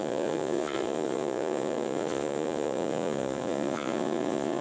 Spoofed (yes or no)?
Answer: yes